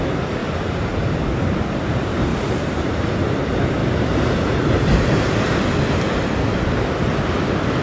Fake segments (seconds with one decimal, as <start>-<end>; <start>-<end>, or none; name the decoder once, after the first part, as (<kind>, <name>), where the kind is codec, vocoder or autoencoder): 2.3-3.1 (vocoder, BigVGAN v2); 3.8-5.6